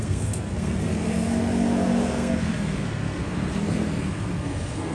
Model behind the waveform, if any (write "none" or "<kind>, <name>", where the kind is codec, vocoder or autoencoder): codec, SNAC